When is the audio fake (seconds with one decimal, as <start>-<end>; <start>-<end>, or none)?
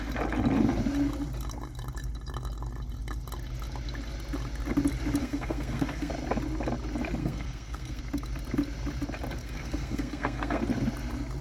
5.2-6.1; 7.2-8.0; 9.4-10.6